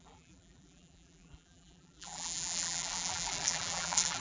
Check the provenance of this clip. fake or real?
fake